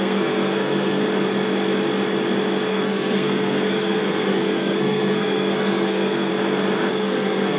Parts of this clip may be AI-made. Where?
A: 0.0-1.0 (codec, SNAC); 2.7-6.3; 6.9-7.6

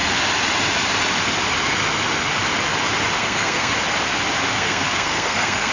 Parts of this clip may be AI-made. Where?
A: 3.2-3.7 (codec, SNAC); 4.5-5.7

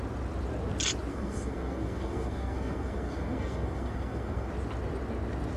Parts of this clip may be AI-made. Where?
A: 1.1-4.5 (codec, SNAC)

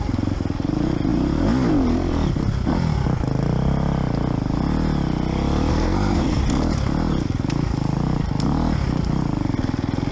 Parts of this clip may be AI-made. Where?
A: 5.7-6.4 (codec, SNAC)

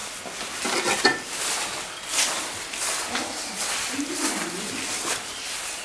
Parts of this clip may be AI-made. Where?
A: none

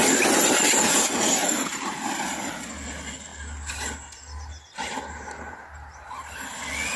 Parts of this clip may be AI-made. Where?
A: none

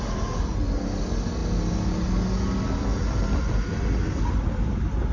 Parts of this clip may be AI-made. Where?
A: none